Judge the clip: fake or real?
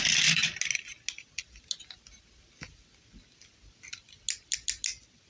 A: real